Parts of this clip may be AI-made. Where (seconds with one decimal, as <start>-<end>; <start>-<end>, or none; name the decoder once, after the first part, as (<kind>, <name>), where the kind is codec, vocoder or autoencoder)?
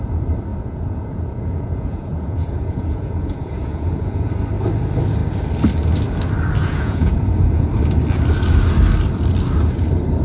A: 0.5-4.3 (vocoder, Vocos); 6.6-7.7